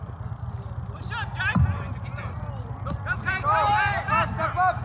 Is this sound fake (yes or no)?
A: no